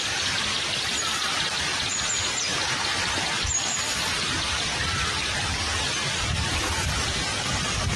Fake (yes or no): no